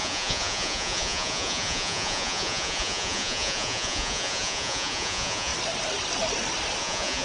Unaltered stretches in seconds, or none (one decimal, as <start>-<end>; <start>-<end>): 5.5-6.8